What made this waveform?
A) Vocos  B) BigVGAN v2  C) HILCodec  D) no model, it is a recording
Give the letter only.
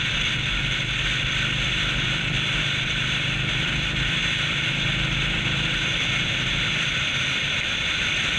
B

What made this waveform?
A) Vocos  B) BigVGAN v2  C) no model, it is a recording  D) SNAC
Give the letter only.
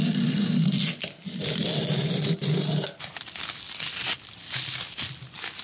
C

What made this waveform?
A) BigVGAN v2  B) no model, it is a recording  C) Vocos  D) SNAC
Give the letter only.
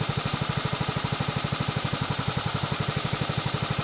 A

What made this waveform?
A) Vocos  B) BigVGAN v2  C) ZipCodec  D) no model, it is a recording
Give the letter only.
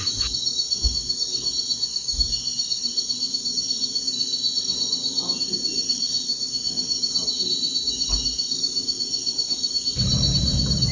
B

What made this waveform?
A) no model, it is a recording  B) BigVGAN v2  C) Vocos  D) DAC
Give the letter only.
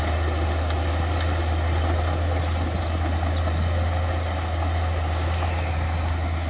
A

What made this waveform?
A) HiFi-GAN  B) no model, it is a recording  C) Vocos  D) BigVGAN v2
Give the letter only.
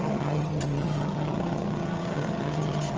A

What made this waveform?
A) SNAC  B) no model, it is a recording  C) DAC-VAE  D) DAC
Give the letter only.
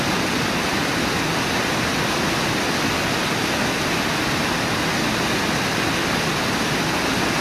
B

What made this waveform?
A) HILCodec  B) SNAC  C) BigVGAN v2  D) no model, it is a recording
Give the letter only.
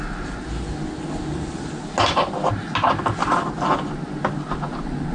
D